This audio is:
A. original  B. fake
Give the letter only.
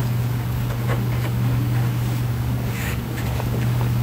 B